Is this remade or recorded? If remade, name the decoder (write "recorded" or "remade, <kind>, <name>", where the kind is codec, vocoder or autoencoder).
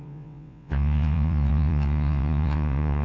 remade, vocoder, WaveNeXt